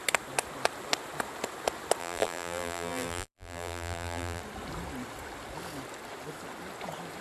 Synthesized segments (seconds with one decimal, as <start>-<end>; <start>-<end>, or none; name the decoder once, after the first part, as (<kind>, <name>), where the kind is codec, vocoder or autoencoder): 2.0-4.4 (vocoder, BigVGAN v2)